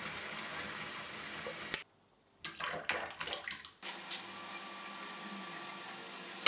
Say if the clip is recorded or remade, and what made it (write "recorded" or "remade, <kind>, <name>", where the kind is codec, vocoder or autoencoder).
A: recorded